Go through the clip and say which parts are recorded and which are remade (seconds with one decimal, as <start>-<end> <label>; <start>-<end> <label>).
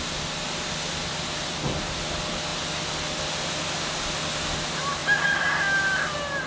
0.0-6.5 recorded